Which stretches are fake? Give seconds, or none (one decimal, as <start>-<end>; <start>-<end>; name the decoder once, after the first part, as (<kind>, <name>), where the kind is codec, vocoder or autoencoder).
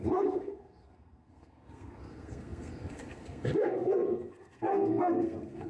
0.0-5.7 (codec, SNAC)